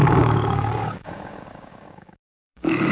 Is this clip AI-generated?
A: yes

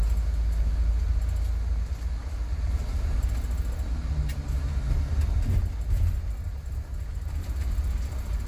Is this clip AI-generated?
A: no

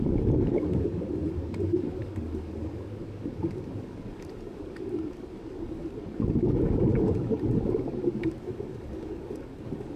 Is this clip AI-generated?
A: yes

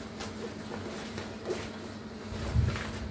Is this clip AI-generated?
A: no